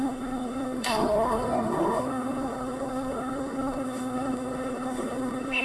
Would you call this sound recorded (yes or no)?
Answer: no